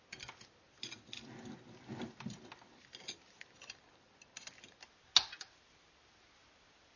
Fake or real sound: real